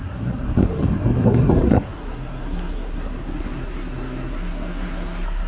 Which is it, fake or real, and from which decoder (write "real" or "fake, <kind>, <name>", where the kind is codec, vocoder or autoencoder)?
fake, codec, SNAC